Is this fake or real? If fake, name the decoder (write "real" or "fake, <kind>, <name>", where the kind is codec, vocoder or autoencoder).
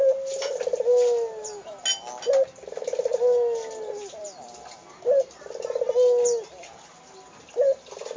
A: real